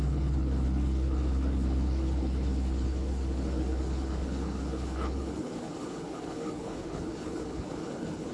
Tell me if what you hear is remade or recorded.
remade